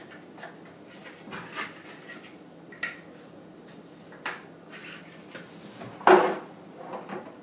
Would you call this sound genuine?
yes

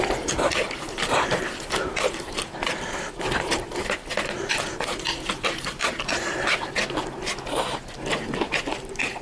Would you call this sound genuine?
yes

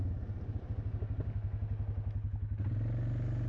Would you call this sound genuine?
yes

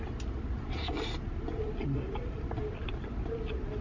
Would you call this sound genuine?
yes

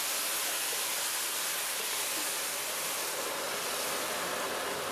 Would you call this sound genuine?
yes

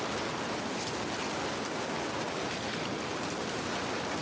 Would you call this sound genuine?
yes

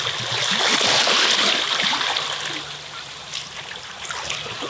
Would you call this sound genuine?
no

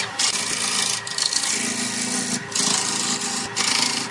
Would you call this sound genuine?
yes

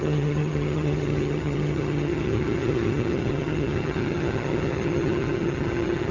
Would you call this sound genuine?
no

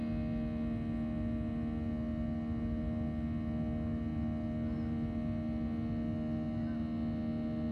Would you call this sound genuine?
yes